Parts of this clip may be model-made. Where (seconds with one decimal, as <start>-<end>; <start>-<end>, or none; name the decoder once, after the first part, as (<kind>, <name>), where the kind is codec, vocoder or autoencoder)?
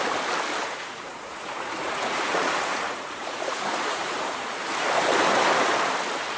0.6-4.4 (vocoder, Vocos)